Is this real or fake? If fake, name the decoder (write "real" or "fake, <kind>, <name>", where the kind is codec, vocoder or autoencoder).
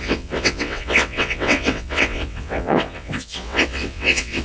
fake, vocoder, WaveNeXt